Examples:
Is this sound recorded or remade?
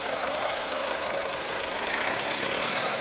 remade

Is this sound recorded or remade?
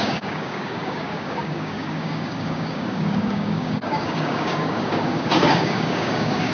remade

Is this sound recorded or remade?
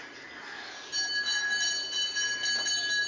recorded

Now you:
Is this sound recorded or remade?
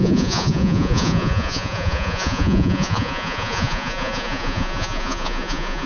remade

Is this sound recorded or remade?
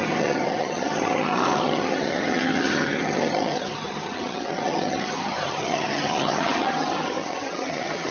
remade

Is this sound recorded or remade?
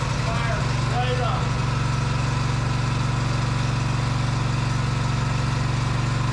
recorded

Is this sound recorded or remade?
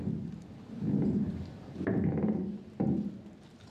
recorded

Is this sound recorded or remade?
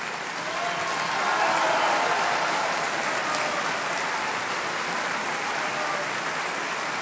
recorded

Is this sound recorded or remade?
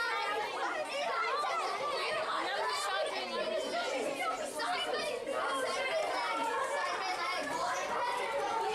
recorded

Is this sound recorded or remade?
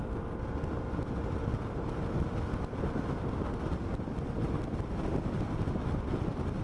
recorded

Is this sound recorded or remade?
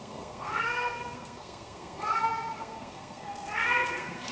remade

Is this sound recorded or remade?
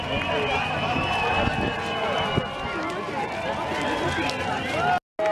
recorded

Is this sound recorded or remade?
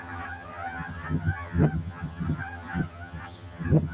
remade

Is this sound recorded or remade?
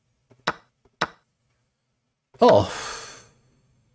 recorded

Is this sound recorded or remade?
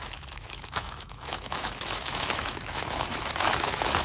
remade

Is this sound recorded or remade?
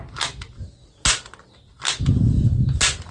recorded